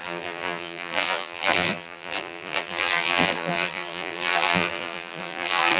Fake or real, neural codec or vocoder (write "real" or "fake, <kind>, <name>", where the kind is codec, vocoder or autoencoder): fake, vocoder, BigVGAN v2